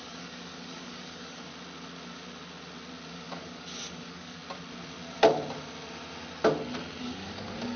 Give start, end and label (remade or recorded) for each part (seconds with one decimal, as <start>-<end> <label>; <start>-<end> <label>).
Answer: 0.0-1.5 remade; 1.5-3.1 recorded; 3.1-4.4 remade; 4.4-7.0 recorded; 7.0-7.8 remade